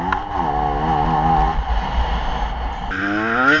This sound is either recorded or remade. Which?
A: recorded